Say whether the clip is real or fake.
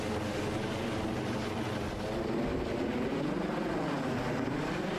real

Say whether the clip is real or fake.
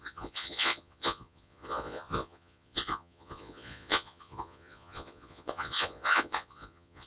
fake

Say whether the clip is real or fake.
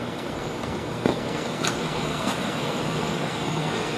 fake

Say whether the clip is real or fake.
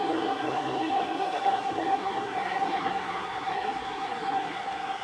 fake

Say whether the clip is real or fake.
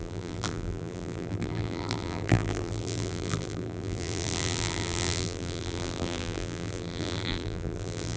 fake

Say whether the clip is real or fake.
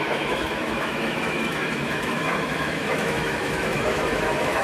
fake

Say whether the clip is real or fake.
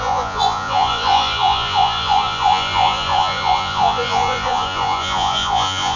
fake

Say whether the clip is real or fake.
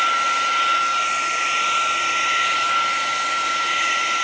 real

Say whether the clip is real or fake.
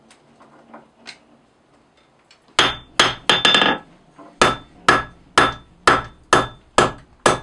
real